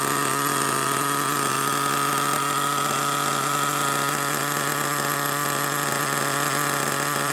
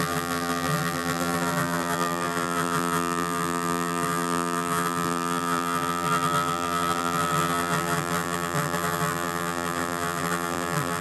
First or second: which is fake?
second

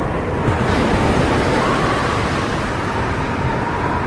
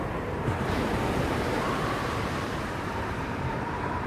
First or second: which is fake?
second